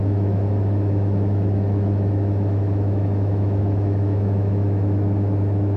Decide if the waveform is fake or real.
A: fake